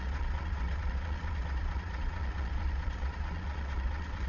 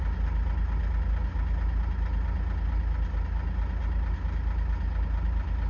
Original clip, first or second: second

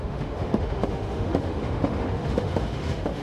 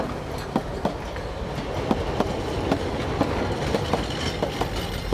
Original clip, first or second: second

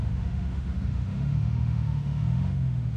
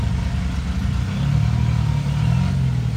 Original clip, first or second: second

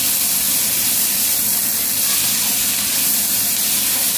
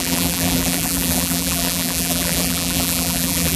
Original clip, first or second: first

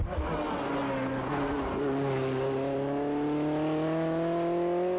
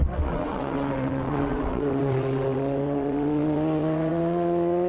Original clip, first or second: first